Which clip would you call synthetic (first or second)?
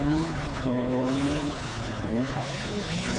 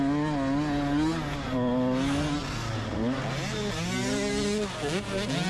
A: first